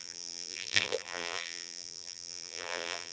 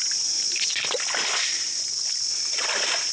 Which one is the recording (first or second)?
second